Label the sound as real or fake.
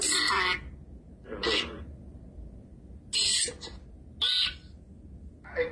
real